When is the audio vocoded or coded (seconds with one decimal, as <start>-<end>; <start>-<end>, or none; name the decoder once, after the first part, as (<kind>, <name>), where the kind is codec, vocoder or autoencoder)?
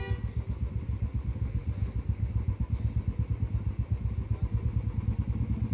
none